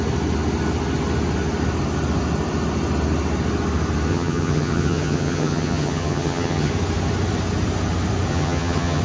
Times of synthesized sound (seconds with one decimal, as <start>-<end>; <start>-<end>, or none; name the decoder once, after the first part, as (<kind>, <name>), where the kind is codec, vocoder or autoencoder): 4.1-6.7 (vocoder, HiFi-GAN); 8.3-9.0